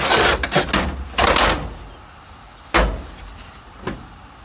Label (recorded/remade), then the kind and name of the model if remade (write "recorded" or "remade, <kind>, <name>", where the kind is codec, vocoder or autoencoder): recorded